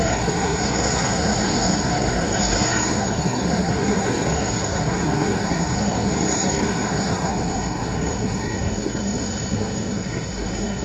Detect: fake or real fake